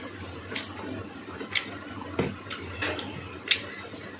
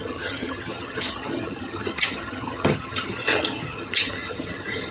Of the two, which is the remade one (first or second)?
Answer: second